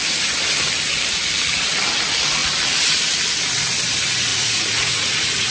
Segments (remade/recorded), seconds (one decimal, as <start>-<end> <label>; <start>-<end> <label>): 0.0-4.3 recorded; 4.3-5.5 remade